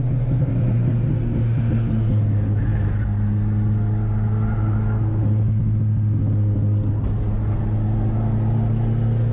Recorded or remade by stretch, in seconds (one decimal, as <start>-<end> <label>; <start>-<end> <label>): 0.0-9.3 recorded